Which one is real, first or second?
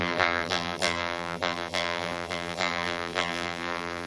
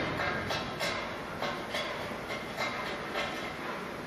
second